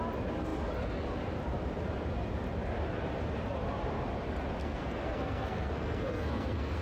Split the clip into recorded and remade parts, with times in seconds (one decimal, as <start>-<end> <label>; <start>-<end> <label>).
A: 0.0-4.6 recorded; 4.6-6.8 remade

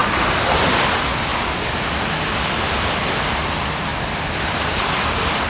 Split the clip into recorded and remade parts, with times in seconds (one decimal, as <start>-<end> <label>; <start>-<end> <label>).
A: 0.0-5.5 recorded